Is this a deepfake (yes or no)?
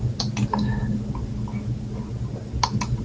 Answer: no